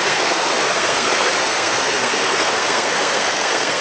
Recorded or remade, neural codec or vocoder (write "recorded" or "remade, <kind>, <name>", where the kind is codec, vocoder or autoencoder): remade, codec, SNAC